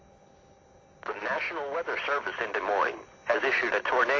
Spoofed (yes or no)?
no